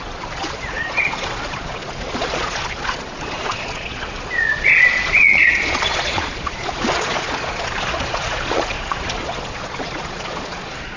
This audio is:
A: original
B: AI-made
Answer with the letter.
B